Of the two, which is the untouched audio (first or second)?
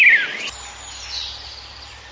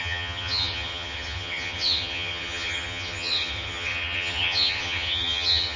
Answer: first